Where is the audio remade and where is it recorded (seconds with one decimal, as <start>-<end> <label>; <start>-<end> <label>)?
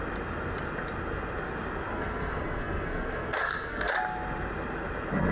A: 0.0-1.9 recorded; 1.9-3.9 remade; 3.9-5.3 recorded